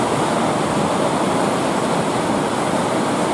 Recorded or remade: recorded